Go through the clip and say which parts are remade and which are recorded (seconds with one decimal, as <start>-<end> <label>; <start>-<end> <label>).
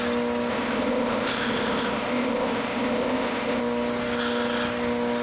0.0-0.5 recorded; 0.5-3.6 remade; 3.6-5.2 recorded